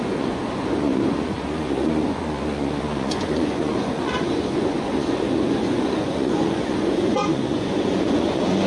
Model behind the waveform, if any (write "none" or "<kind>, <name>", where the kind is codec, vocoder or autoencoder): vocoder, Vocos